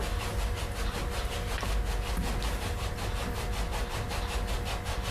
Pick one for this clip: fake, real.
real